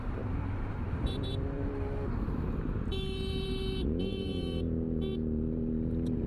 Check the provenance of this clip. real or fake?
fake